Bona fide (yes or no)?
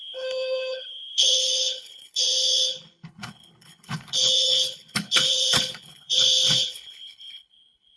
no